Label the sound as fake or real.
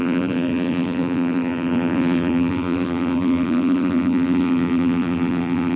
fake